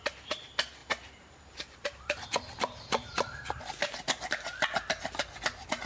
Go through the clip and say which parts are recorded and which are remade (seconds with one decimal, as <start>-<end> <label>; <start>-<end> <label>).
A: 0.0-0.8 recorded; 0.8-4.3 remade; 4.3-5.9 recorded